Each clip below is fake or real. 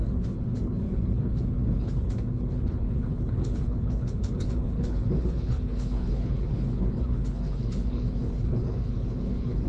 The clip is fake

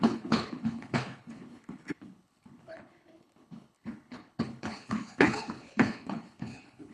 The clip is fake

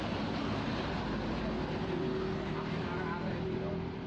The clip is real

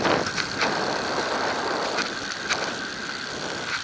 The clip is real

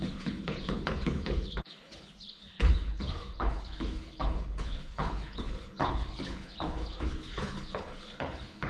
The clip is fake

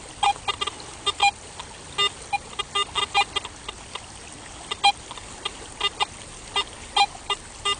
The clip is real